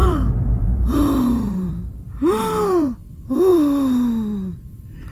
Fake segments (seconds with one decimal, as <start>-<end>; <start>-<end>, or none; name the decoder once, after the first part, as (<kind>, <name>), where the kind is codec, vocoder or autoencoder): 0.0-3.1 (vocoder, BigVGAN v2)